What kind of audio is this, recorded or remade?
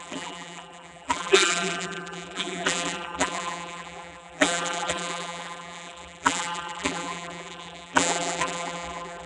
remade